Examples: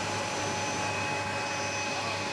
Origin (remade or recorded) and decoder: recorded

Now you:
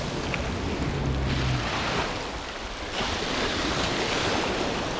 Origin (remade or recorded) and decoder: recorded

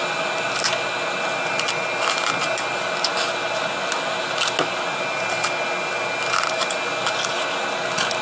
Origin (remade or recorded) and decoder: recorded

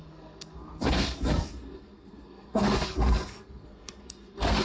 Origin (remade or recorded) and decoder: remade, codec, SNAC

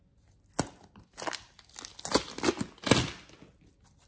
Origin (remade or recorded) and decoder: recorded